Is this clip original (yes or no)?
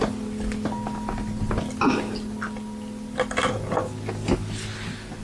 yes